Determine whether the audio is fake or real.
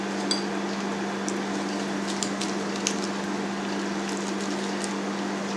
real